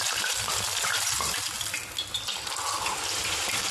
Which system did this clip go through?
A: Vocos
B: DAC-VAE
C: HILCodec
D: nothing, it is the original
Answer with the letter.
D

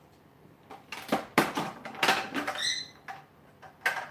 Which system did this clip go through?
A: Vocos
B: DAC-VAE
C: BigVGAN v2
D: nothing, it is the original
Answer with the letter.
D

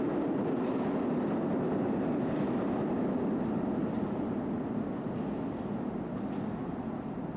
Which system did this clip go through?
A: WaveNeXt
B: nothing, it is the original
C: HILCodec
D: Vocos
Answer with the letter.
B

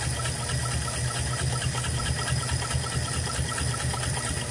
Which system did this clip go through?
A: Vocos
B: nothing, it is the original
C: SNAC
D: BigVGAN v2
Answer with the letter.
B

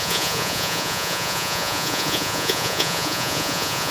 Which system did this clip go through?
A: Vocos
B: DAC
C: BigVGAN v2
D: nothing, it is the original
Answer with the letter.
A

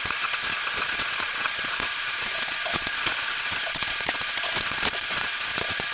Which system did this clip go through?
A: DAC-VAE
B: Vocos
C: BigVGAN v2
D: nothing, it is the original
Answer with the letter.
B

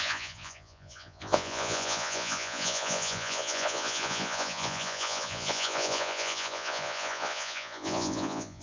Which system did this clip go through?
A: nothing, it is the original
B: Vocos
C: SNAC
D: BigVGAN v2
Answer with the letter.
B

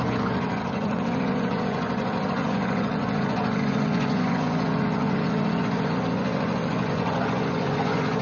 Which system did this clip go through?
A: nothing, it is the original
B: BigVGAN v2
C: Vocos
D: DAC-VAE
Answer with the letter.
C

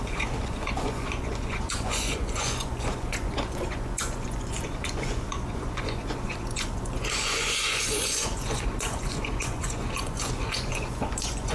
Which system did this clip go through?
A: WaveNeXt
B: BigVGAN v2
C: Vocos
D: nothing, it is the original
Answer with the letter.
C